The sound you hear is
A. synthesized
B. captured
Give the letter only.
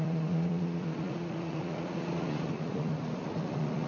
A